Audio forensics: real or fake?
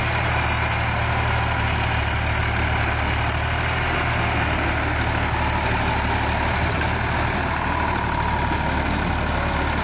real